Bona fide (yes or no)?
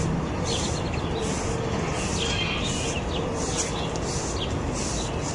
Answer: yes